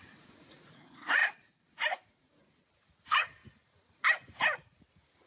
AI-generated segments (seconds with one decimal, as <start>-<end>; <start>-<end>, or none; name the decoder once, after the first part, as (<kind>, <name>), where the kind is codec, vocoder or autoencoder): 0.0-3.4 (vocoder, Vocos); 4.8-5.3